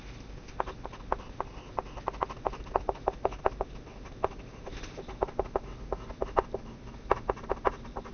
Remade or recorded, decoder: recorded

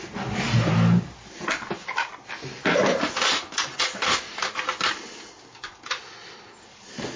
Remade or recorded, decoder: recorded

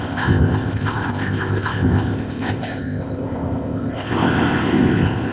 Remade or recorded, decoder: remade, codec, ZipCodec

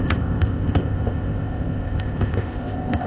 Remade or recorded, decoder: remade, codec, ZipCodec